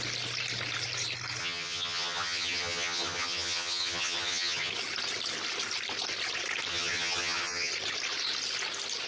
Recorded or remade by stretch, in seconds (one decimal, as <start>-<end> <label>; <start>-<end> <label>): 0.0-1.4 recorded; 1.4-4.7 remade; 4.7-6.7 recorded; 6.7-7.7 remade; 7.7-9.1 recorded